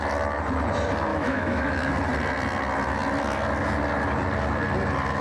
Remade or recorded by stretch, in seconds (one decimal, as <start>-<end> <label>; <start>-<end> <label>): 0.0-1.1 recorded; 1.1-1.9 remade; 1.9-5.2 recorded